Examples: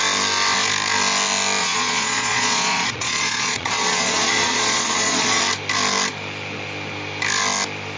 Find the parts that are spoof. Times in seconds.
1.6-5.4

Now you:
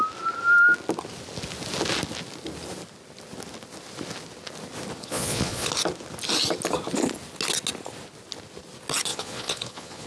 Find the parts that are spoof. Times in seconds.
5.0-5.7; 9.1-10.1

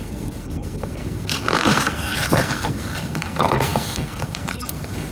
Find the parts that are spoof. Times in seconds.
0.0-5.1

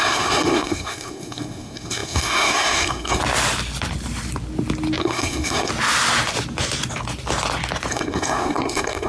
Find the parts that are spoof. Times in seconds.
0.0-3.2; 5.0-5.7; 7.9-9.1

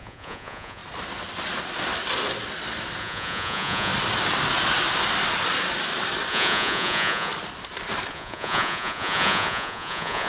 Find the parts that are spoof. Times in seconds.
0.0-0.8; 3.0-3.9; 6.3-7.3; 8.1-10.3

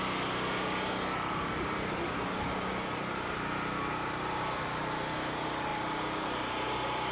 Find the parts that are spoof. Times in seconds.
none

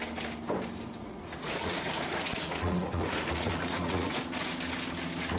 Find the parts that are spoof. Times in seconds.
1.0-4.2